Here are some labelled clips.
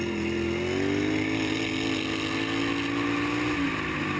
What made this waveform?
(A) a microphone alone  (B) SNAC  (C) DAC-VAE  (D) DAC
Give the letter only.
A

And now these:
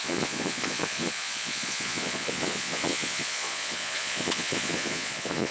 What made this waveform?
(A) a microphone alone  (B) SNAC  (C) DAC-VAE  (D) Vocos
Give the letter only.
D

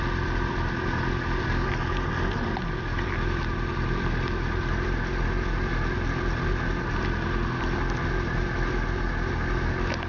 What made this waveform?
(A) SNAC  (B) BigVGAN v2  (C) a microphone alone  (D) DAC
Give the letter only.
C